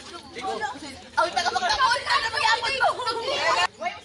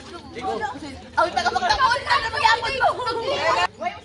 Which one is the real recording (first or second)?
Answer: second